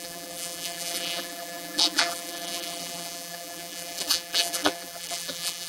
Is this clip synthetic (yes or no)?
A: yes